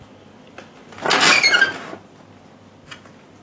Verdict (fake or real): real